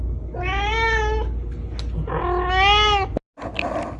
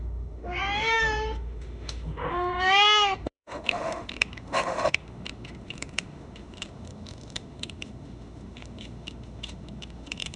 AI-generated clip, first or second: second